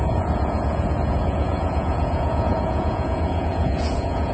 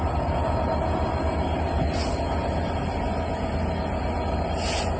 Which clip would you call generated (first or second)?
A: first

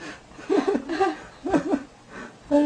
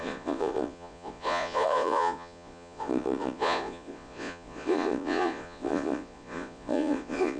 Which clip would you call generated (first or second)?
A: second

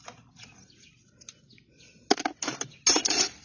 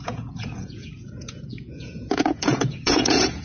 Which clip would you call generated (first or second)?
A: second